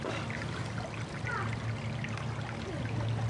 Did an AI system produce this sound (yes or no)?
no